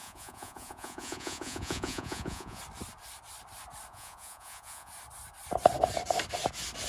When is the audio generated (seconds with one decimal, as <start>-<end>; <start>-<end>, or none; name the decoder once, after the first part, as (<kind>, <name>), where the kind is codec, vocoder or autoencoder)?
0.0-2.6 (vocoder, Vocos); 3.9-4.9